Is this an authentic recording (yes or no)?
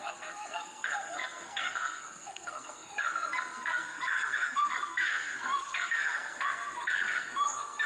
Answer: no